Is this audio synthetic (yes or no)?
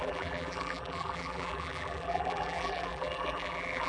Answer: yes